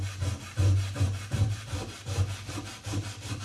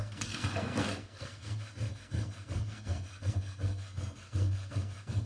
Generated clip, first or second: second